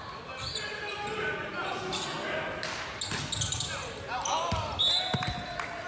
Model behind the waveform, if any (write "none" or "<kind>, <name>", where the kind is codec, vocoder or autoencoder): none